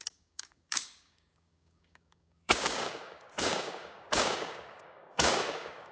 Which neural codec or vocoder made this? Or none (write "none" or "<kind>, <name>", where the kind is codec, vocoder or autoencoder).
codec, DAC